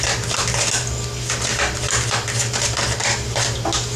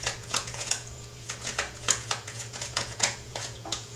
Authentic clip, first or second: first